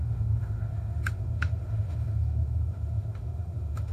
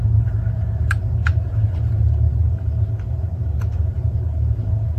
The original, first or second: second